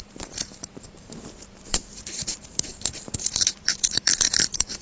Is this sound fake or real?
fake